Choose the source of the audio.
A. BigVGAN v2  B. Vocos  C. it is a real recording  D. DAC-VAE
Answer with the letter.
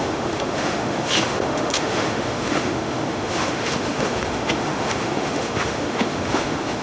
D